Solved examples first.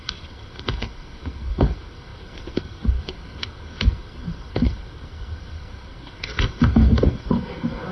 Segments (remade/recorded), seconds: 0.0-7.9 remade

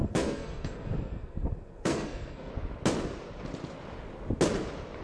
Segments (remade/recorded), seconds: 0.0-2.5 remade; 2.5-5.0 recorded

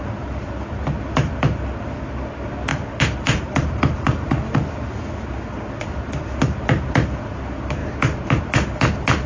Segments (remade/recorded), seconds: 0.0-9.3 recorded